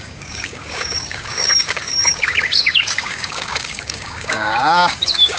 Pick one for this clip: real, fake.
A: fake